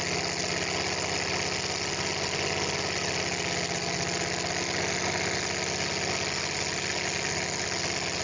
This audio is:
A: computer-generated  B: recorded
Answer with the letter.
B